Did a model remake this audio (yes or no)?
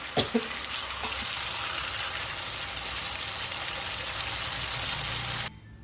no